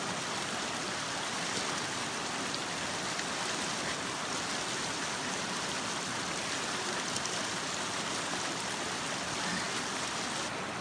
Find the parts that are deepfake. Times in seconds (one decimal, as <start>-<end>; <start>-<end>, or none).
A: none